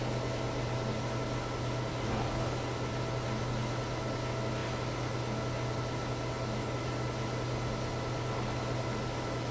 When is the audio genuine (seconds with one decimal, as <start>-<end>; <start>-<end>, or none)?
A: 0.0-9.5